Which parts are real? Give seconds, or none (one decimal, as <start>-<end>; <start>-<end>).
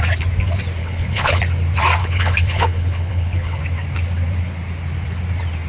0.0-0.8; 1.4-2.0; 3.6-5.7